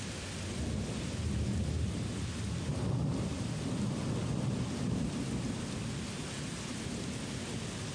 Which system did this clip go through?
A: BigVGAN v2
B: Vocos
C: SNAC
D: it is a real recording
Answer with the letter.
D